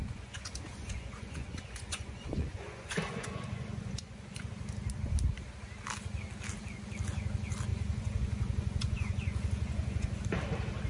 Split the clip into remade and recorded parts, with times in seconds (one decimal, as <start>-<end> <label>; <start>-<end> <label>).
0.0-4.5 remade; 4.5-7.7 recorded; 7.7-10.2 remade; 10.2-10.9 recorded